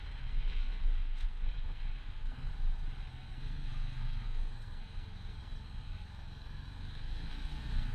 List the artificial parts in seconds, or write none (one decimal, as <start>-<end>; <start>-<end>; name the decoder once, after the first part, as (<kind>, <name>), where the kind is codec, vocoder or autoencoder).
0.0-2.5 (codec, SNAC); 3.1-7.9